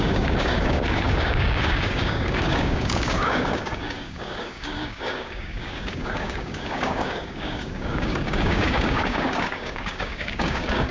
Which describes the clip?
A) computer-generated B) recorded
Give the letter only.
A